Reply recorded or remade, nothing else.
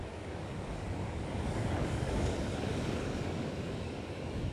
remade